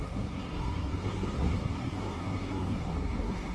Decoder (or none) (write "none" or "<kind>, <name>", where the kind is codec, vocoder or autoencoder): codec, SNAC